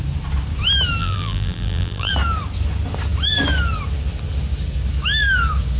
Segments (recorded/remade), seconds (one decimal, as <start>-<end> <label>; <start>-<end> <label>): 0.0-1.0 recorded; 1.0-2.1 remade; 2.1-5.8 recorded